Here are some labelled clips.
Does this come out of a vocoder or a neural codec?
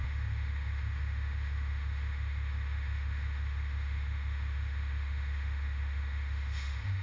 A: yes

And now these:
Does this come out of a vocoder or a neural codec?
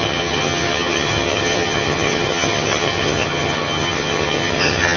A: yes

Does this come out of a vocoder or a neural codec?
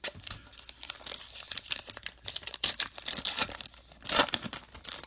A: no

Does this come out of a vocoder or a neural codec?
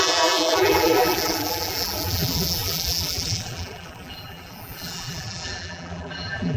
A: yes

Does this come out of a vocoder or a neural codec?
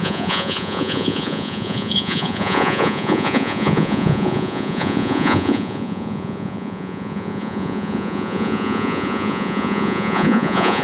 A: yes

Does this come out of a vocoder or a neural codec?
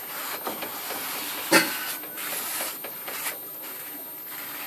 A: no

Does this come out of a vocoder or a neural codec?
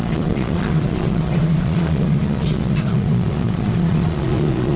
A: yes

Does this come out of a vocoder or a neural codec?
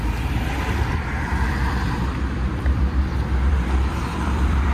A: yes